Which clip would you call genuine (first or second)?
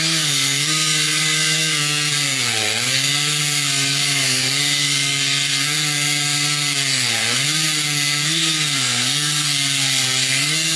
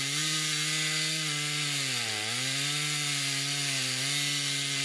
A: second